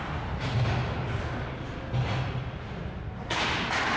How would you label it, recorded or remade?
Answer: recorded